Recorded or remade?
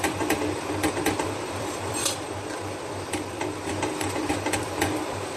remade